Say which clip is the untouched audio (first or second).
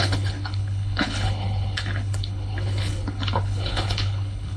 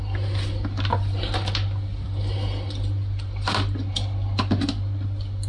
second